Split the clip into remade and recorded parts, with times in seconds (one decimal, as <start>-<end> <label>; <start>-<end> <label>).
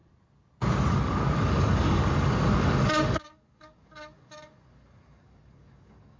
0.0-0.9 recorded; 0.9-6.2 remade